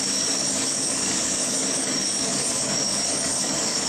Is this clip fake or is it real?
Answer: fake